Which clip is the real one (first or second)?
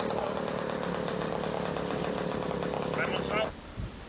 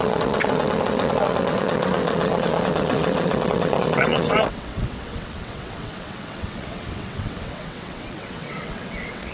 first